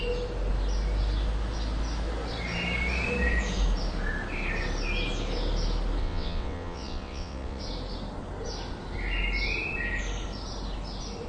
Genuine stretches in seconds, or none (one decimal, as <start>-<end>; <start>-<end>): 0.0-6.0; 7.6-11.3